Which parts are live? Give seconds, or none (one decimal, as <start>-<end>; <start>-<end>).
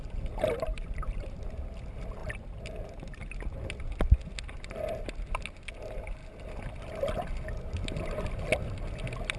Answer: 0.0-0.7; 1.4-9.4